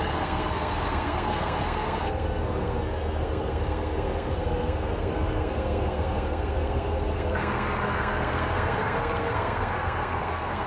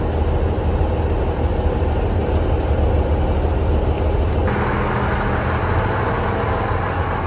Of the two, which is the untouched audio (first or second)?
second